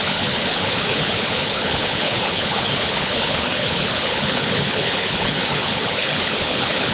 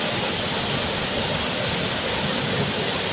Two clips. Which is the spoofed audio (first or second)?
first